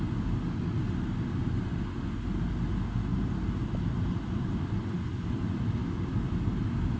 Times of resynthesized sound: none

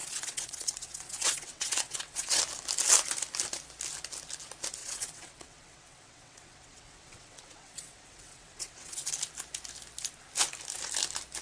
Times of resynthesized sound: 0.0-2.4; 4.8-9.1

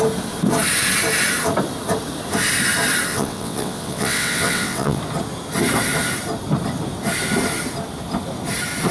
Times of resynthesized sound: 3.1-5.0